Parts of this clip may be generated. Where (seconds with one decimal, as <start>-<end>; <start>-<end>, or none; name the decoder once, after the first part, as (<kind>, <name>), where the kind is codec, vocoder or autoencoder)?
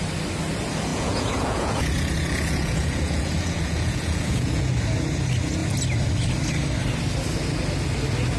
0.9-4.7 (vocoder, Vocos)